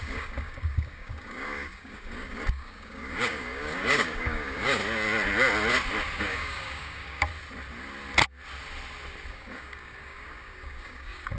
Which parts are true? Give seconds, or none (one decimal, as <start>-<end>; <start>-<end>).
4.8-6.2; 7.3-9.3